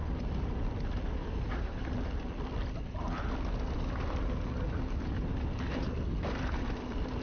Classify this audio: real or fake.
real